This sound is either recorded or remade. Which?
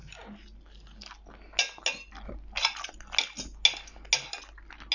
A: recorded